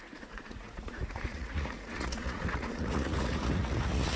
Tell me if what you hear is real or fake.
fake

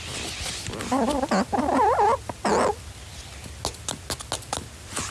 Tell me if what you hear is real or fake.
real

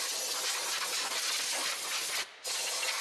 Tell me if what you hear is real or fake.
real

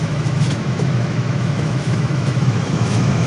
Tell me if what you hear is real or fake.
fake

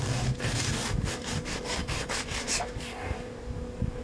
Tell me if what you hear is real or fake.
fake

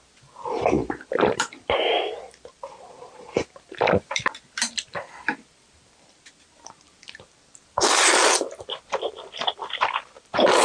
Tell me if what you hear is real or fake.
fake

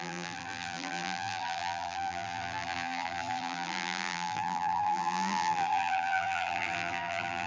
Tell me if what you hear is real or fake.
fake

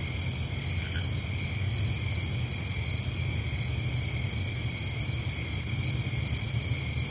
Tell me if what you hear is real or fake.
real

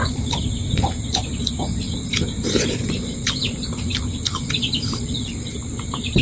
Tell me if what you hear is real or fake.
fake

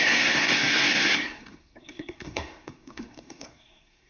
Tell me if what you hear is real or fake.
fake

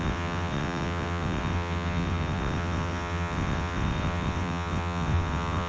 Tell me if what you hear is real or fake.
fake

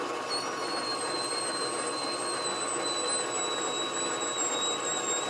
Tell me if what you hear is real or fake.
real